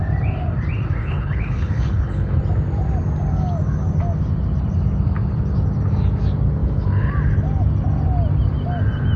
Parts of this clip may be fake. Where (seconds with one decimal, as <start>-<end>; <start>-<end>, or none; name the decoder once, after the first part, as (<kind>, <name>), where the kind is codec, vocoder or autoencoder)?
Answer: 1.0-2.4 (codec, HILCodec); 6.6-7.1